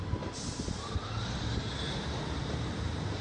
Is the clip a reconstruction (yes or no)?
no